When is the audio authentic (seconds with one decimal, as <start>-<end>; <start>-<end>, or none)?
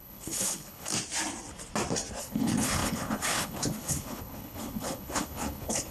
0.9-2.2